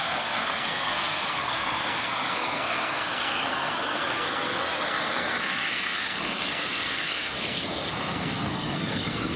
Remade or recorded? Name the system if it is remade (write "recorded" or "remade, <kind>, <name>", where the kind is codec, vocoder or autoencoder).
remade, codec, SNAC